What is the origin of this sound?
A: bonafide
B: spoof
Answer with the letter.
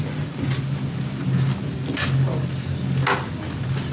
A